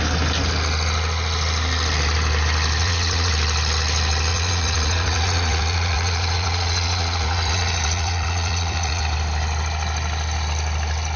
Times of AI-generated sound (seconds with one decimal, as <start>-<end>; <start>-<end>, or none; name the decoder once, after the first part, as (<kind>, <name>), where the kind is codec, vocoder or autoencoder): 2.8-3.3 (vocoder, Vocos); 4.3-9.0

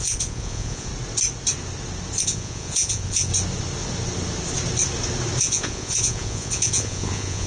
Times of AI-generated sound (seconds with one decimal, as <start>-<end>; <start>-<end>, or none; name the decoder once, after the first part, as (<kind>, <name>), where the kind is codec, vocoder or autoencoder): 0.0-0.9 (vocoder, Vocos); 2.2-3.3; 5.4-7.5

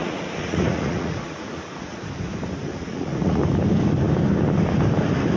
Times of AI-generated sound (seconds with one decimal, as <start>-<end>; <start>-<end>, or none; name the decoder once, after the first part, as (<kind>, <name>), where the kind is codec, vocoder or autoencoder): 0.0-2.0 (vocoder, Vocos); 2.7-3.4

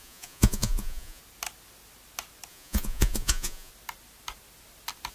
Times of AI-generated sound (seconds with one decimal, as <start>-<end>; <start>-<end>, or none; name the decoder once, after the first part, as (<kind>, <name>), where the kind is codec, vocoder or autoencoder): 0.0-1.2 (vocoder, Vocos); 2.5-3.7

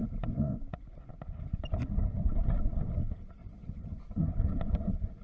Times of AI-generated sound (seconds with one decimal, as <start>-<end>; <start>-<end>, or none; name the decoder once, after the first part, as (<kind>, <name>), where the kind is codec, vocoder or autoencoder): 0.0-1.1 (vocoder, Vocos); 3.4-4.2

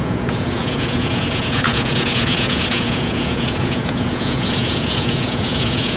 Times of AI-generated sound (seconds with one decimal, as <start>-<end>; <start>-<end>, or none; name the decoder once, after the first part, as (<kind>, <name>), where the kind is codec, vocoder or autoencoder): 0.0-6.0 (vocoder, Vocos)